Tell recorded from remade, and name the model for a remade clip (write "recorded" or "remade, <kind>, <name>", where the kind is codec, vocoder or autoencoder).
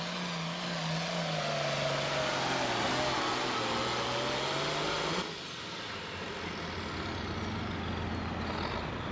recorded